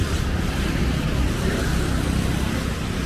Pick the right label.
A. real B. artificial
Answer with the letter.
A